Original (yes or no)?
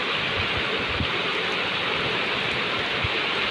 yes